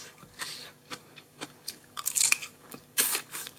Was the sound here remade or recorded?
remade